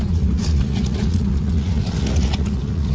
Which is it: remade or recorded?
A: remade